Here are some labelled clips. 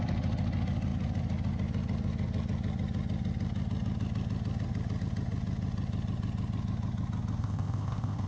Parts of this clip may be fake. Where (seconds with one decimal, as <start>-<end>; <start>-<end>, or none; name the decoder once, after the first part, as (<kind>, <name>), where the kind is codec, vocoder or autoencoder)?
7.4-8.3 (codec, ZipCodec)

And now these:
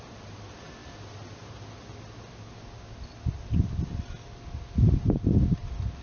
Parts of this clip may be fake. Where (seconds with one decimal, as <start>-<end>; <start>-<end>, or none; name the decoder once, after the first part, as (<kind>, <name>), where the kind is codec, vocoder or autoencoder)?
none

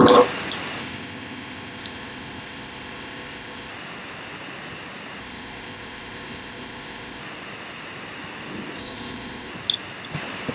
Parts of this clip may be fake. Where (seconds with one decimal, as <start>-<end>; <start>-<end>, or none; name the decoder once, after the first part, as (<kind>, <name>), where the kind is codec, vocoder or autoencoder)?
0.8-3.7 (codec, ZipCodec); 5.2-7.2; 8.8-9.5

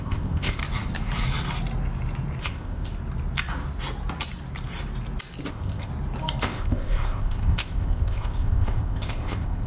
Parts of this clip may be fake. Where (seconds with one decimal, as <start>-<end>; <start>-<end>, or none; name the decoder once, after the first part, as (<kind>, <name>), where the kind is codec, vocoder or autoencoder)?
0.0-0.6 (codec, ZipCodec); 2.4-2.9; 5.5-5.9; 6.4-9.7